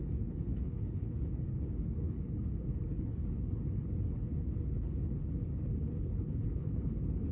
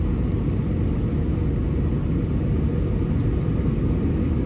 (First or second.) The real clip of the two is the second